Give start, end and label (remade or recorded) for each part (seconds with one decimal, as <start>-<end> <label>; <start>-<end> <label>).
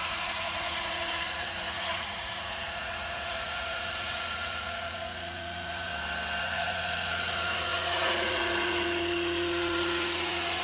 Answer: 0.0-5.9 remade; 5.9-6.4 recorded; 6.4-10.6 remade